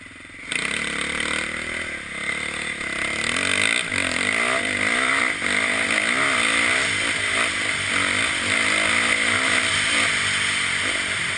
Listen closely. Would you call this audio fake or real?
real